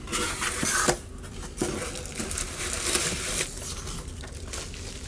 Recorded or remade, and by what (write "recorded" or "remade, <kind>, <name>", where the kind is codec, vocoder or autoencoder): recorded